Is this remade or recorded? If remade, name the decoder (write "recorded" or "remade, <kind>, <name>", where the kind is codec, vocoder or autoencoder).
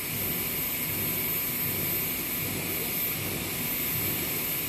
recorded